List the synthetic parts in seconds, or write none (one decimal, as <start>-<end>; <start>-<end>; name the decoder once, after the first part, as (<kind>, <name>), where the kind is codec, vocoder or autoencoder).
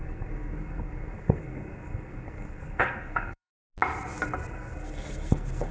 0.0-3.5 (codec, SNAC); 4.5-5.7